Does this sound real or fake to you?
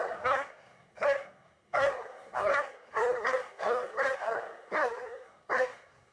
fake